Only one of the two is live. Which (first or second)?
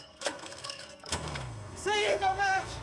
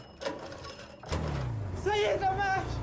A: second